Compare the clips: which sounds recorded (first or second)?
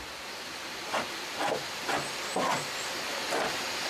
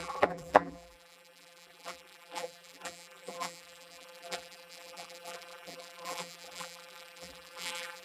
first